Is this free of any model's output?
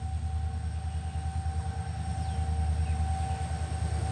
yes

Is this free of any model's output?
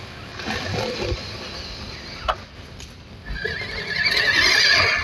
yes